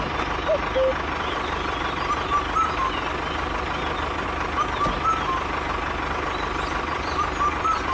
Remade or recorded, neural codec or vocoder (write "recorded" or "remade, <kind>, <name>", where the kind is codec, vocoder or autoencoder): recorded